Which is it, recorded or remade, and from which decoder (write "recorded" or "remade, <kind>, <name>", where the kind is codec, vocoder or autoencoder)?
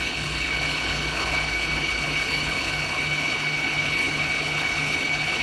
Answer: remade, codec, HILCodec